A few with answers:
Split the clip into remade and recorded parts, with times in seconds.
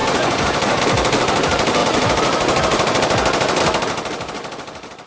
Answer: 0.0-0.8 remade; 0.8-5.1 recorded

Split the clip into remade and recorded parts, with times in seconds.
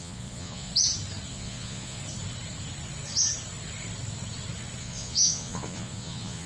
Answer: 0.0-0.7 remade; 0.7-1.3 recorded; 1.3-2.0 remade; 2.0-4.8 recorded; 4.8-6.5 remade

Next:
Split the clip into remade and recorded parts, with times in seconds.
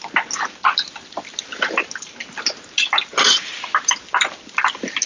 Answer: 0.0-5.1 recorded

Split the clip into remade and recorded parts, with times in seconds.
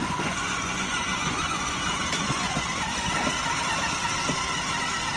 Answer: 0.0-3.1 remade; 3.1-5.2 recorded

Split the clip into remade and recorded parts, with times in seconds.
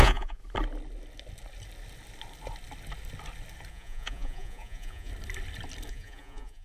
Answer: 0.0-0.4 remade; 0.4-3.7 recorded; 3.7-5.1 remade; 5.1-5.9 recorded; 5.9-6.6 remade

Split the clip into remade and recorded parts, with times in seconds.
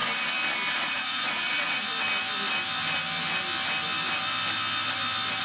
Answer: 0.0-0.7 recorded; 0.7-1.9 remade; 1.9-5.4 recorded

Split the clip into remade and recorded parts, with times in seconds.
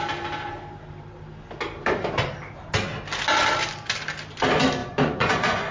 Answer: 0.0-4.8 recorded; 4.8-5.7 remade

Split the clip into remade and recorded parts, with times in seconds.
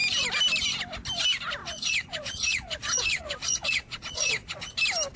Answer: 0.0-1.6 recorded; 1.6-4.7 remade; 4.7-5.2 recorded